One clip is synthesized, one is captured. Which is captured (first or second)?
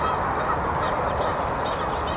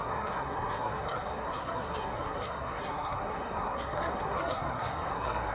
first